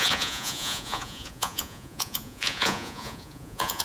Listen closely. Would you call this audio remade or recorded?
remade